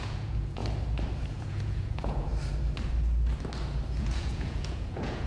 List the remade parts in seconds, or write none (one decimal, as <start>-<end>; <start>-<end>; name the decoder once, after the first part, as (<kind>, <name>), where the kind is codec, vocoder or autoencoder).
0.0-0.6 (vocoder, Vocos); 1.3-2.3; 4.0-5.3